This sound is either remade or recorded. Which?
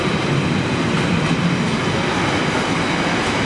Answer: recorded